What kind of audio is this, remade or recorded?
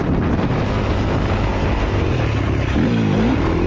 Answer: recorded